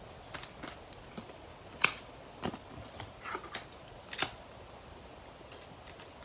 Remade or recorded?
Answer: recorded